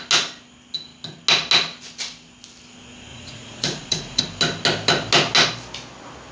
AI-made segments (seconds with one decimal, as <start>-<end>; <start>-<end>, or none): 3.1-4.2